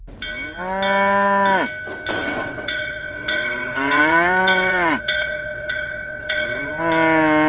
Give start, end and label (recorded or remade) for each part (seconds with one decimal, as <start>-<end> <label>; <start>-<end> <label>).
0.0-2.2 recorded; 2.2-6.7 remade; 6.7-7.5 recorded